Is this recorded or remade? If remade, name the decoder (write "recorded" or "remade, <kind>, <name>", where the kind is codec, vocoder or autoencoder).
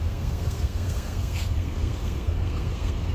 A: remade, codec, SNAC